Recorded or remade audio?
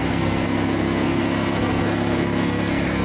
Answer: remade